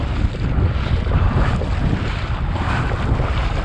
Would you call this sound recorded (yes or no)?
yes